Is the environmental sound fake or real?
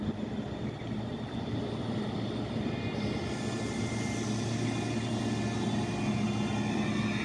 real